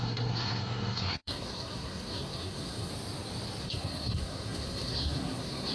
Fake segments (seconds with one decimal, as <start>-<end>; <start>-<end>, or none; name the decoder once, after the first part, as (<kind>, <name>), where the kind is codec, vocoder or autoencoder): 0.0-2.9 (codec, SNAC); 3.6-5.7